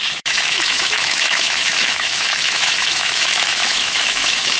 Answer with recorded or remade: remade